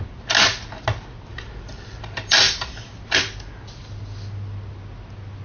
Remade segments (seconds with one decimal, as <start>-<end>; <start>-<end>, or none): 1.3-2.8